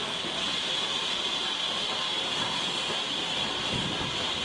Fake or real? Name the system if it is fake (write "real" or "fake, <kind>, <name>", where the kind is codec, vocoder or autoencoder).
real